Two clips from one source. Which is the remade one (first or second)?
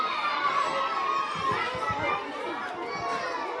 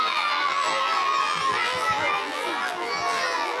second